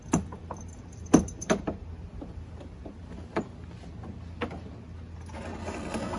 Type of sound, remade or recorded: recorded